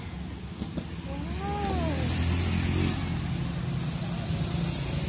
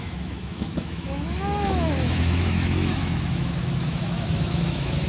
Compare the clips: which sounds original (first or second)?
first